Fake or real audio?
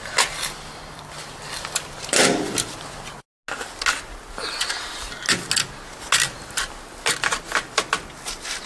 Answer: real